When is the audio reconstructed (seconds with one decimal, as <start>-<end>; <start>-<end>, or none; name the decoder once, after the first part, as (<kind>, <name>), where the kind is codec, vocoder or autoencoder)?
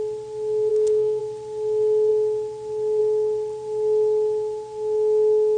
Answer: 0.7-1.2 (codec, SNAC)